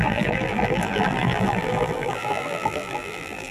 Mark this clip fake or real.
fake